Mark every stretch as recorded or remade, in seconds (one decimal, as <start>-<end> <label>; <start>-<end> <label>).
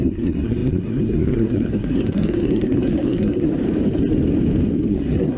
0.0-3.5 remade; 3.5-4.9 recorded; 4.9-5.4 remade